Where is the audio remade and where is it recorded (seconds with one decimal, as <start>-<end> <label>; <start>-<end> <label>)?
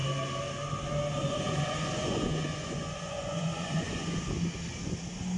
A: 0.0-1.2 recorded; 1.2-4.3 remade; 4.3-5.4 recorded